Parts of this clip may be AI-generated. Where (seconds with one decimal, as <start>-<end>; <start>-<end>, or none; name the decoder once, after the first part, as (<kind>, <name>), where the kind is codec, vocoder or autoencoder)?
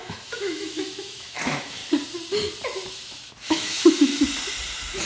0.0-1.8 (autoencoder, DAC-VAE); 2.9-4.1